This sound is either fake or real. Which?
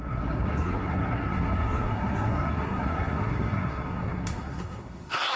fake